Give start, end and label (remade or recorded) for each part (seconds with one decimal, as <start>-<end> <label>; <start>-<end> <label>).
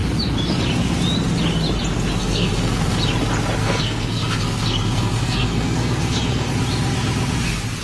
0.0-2.2 recorded; 2.2-3.0 remade; 3.0-3.6 recorded; 3.6-6.5 remade; 6.5-7.8 recorded